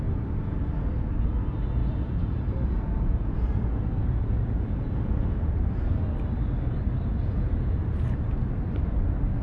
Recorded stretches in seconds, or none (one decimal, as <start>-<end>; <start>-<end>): 0.0-1.8; 5.5-7.1; 8.3-9.4